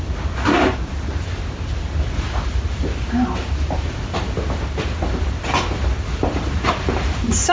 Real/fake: real